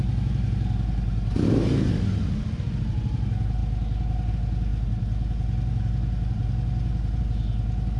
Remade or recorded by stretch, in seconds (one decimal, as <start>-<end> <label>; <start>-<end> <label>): 0.0-8.0 recorded